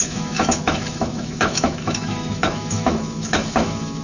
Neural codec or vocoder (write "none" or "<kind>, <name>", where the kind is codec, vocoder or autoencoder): autoencoder, DAC-VAE